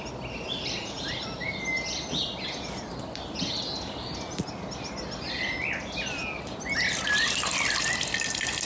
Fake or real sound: real